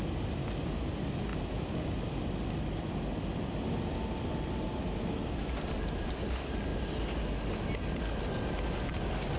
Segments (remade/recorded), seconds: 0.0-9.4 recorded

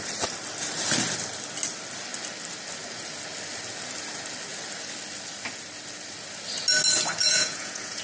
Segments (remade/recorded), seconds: 0.0-7.2 recorded; 7.2-8.0 remade